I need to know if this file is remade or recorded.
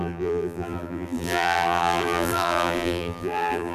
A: remade